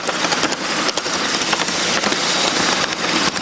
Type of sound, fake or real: real